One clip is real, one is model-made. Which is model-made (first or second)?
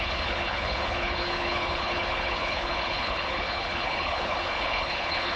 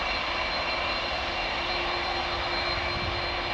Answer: first